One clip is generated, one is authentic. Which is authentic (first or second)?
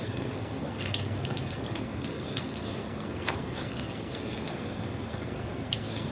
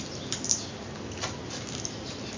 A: second